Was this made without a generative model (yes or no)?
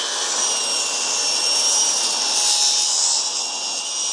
yes